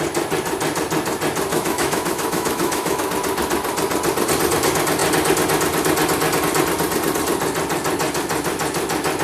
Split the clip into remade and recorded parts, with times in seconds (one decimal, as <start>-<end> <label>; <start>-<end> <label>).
0.0-1.5 recorded; 1.5-3.1 remade; 3.1-9.2 recorded